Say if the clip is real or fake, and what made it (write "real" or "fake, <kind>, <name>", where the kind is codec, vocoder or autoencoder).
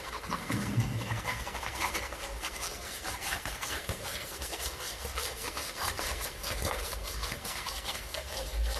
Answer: fake, codec, SNAC